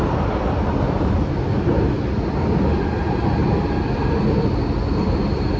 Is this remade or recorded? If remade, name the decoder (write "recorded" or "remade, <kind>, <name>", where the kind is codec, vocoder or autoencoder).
recorded